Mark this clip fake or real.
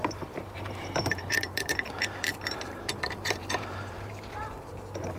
fake